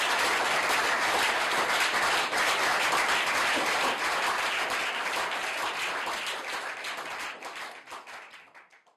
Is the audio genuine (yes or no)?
yes